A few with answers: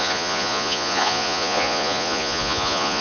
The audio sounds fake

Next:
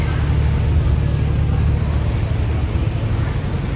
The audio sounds real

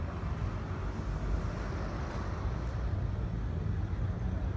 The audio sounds real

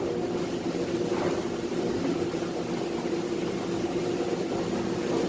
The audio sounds real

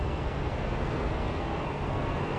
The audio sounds fake